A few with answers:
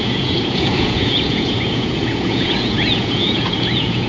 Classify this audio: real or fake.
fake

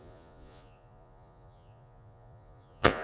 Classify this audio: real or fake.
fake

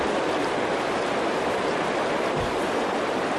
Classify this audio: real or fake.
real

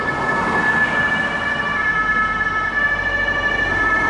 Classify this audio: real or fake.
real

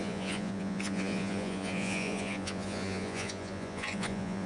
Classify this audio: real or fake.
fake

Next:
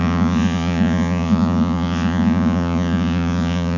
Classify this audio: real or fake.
fake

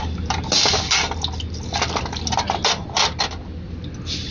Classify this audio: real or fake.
real